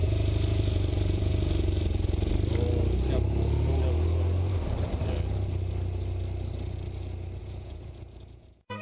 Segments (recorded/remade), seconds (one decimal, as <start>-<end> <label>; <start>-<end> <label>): 0.0-2.3 remade; 2.3-7.4 recorded; 7.4-8.8 remade